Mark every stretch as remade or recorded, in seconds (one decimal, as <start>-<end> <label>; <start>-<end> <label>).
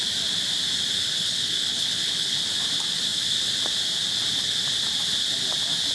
0.0-1.0 recorded; 1.0-2.4 remade; 2.4-5.9 recorded